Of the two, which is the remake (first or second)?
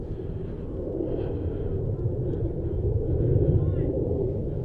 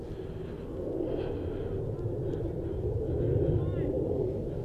first